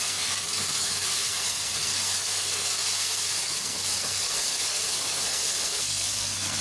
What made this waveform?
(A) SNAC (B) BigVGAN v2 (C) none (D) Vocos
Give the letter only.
A